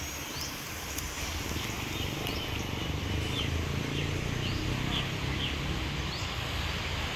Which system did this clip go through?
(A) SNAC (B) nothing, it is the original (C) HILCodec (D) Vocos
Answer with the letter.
B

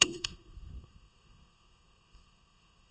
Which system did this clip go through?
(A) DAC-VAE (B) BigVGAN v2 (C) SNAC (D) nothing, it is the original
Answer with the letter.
C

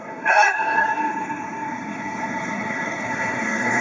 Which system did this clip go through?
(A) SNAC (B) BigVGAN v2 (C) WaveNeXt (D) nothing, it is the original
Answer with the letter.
A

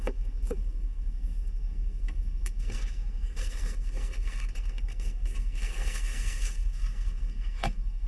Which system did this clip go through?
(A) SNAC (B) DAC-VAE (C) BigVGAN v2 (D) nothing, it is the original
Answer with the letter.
A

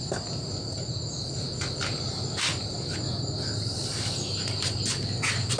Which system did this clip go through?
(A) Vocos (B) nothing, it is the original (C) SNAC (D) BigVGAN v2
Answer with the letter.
B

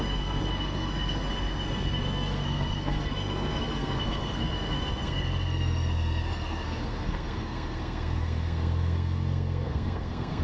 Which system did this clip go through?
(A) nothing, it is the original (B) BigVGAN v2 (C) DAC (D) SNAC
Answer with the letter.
D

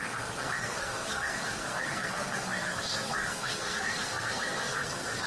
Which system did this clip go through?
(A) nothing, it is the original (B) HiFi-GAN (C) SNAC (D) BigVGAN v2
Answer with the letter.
C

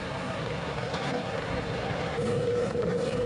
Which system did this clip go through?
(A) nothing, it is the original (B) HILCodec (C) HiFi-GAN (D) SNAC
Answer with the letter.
D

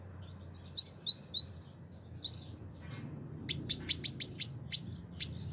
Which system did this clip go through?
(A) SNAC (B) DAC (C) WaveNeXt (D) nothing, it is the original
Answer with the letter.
D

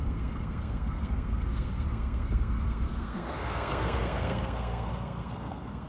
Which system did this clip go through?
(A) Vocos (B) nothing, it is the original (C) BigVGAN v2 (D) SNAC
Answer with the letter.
D